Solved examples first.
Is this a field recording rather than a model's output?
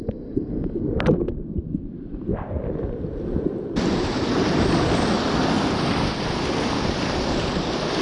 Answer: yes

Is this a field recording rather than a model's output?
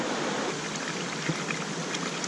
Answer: yes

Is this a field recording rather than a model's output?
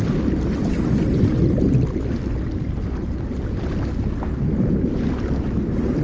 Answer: yes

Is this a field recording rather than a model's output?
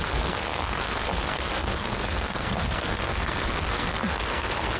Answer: no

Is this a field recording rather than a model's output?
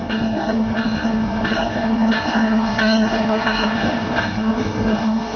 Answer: no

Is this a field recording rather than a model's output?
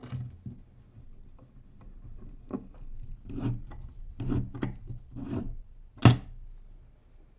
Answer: yes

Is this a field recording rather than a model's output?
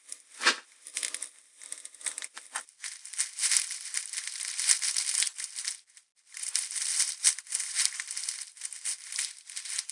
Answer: yes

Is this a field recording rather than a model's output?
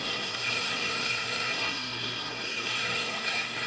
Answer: no